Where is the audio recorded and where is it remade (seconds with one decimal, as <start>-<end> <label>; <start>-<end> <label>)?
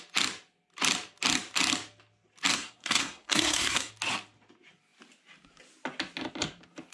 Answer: 0.0-2.5 recorded; 2.5-3.9 remade; 3.9-6.9 recorded